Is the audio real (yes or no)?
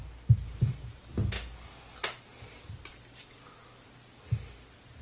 yes